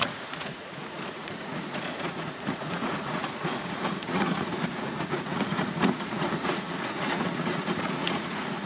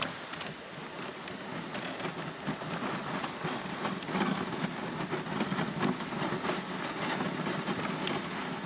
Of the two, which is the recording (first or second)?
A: second